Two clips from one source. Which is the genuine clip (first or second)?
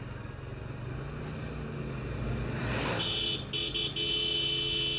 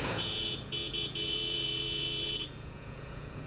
first